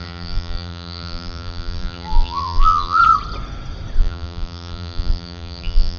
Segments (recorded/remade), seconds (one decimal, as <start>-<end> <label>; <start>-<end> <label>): 0.0-3.0 remade; 3.0-4.0 recorded; 4.0-6.0 remade